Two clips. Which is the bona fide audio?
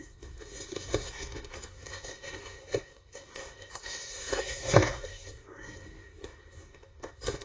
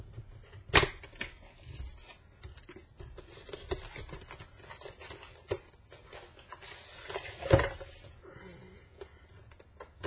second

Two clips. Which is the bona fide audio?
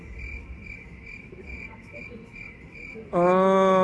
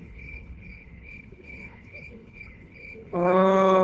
first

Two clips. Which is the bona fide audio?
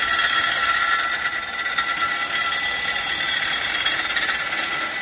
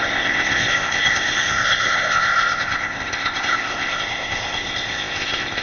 first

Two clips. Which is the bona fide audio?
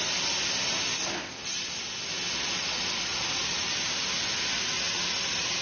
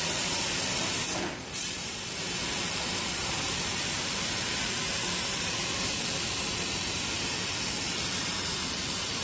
first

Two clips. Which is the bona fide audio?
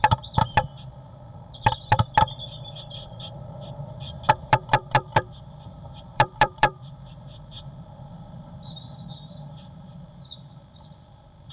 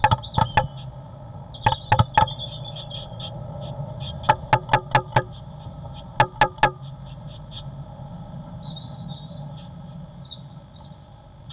second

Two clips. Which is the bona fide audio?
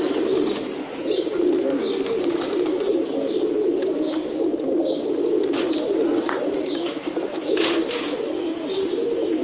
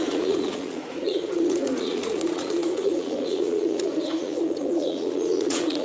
first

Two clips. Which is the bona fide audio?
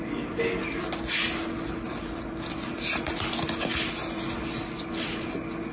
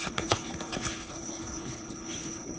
first